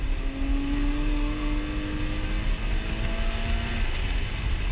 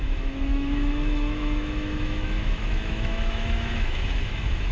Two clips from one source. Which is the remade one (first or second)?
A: second